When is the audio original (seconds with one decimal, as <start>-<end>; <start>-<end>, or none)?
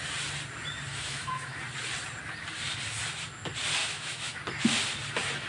0.0-0.9; 1.6-3.8; 4.3-5.5